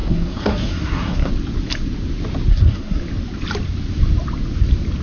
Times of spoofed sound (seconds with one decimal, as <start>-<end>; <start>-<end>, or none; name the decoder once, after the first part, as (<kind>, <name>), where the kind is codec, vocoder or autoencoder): 0.0-1.3 (codec, SNAC); 2.5-3.0